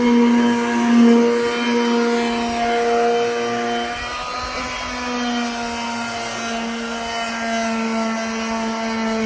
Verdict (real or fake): real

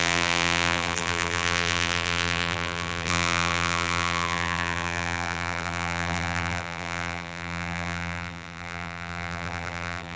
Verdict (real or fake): fake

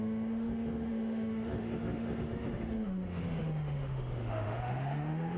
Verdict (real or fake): fake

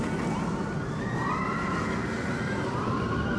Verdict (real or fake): real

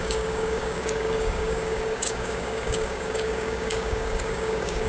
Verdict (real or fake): fake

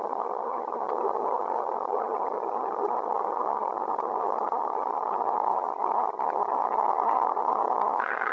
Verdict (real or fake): fake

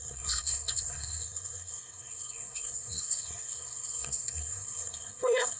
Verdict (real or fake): fake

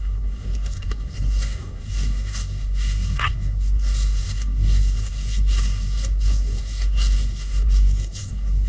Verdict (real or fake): fake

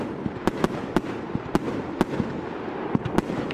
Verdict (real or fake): real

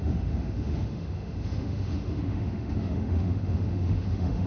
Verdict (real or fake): fake